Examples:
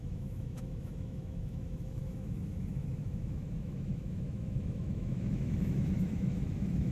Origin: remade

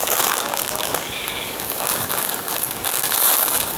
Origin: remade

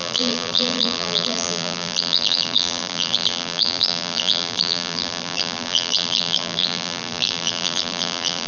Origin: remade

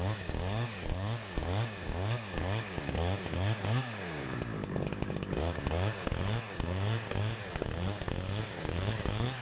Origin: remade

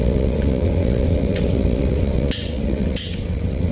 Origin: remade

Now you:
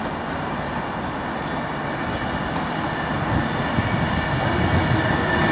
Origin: recorded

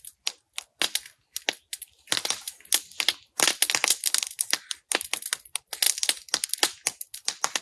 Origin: recorded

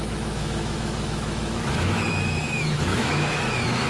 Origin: remade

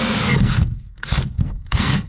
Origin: remade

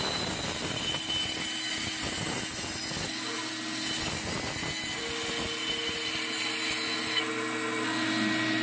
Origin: recorded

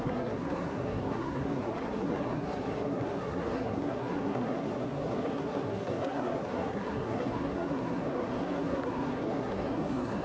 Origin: remade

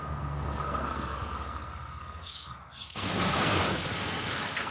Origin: remade